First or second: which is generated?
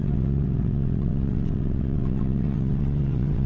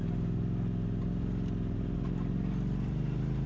first